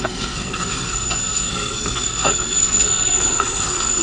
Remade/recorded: remade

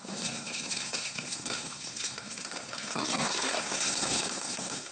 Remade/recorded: remade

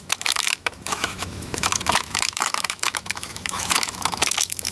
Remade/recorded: remade